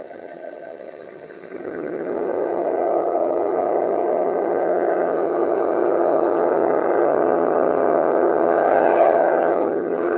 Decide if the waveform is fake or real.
fake